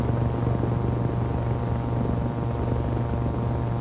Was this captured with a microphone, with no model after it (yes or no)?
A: yes